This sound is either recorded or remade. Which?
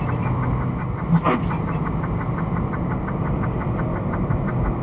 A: recorded